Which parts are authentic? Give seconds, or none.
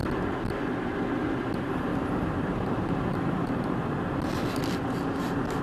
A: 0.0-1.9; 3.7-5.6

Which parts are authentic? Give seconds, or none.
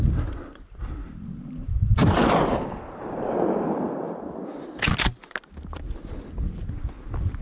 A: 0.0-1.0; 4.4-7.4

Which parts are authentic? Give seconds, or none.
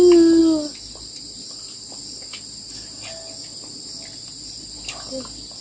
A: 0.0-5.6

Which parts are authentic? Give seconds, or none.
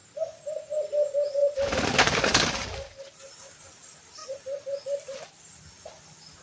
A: 0.0-1.4; 2.9-4.2; 5.7-6.4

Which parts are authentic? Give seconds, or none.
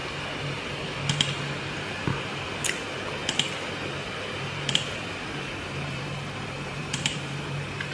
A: 0.0-4.7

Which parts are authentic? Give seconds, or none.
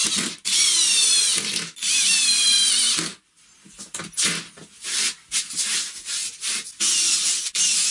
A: 0.0-1.3; 3.2-7.9